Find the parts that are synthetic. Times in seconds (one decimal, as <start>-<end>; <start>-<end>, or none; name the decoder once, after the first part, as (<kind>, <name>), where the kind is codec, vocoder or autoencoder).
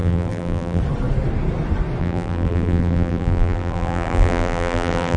0.0-0.8 (vocoder, BigVGAN v2); 2.0-5.2